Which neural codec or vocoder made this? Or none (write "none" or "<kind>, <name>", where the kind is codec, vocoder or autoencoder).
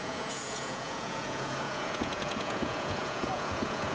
vocoder, Vocos